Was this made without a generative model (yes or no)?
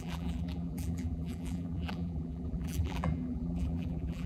no